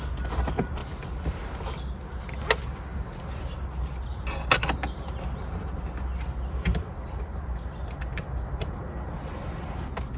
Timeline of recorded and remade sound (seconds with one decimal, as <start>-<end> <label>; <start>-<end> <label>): 0.0-10.2 recorded